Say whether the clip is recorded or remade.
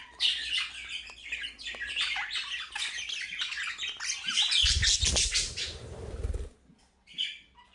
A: recorded